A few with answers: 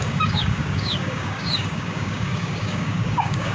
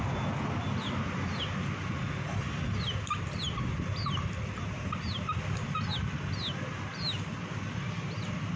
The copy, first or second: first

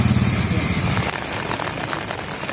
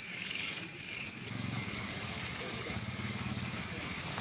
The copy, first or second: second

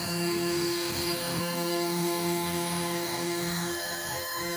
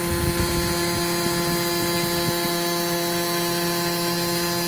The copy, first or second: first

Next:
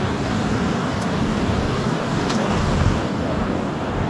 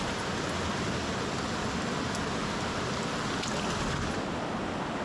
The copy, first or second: first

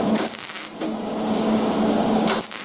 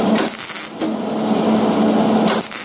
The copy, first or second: first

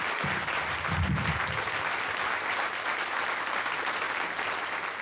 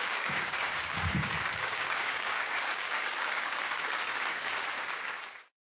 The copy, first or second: second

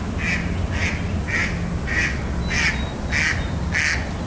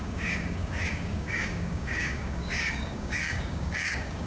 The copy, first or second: second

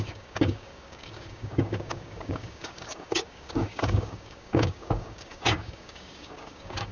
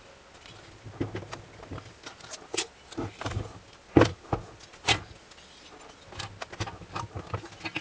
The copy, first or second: first